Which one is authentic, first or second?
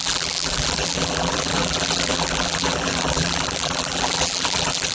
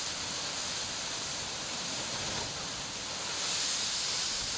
second